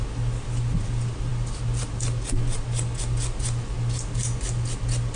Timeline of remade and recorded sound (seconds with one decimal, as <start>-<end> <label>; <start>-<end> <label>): 0.0-5.2 recorded